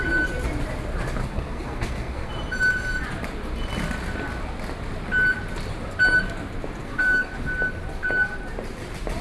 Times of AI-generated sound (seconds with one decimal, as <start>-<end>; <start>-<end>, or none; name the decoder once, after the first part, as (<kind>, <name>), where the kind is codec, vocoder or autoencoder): 1.2-2.3 (codec, SNAC); 6.8-7.3